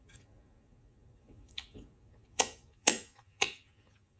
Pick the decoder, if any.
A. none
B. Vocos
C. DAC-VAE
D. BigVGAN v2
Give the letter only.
B